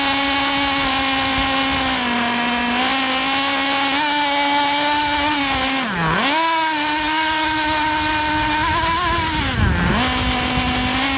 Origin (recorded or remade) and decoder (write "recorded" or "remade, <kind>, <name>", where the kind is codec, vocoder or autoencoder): recorded